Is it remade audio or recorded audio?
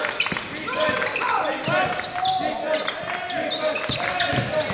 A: recorded